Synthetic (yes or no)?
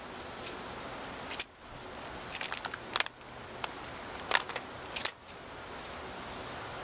no